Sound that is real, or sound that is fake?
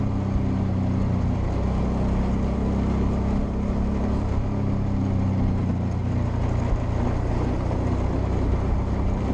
real